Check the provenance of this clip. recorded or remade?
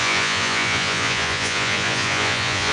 remade